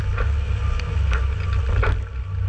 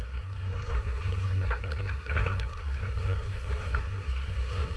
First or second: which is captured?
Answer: first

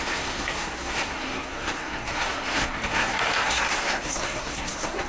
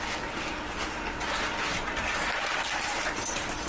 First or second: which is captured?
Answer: second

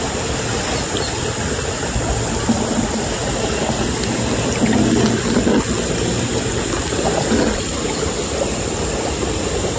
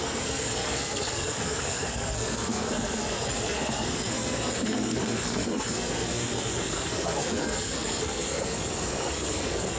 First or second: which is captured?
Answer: first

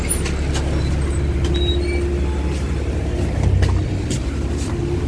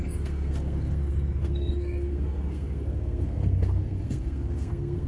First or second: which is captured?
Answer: first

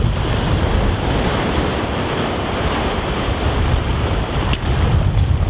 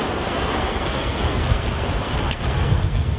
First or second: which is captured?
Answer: first